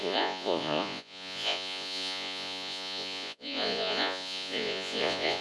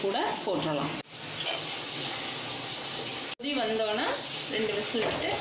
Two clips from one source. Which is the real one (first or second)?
second